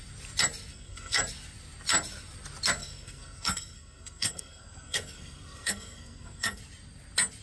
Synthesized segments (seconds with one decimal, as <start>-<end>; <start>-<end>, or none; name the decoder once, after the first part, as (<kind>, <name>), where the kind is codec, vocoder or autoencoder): 0.7-1.2 (codec, SNAC); 2.8-6.6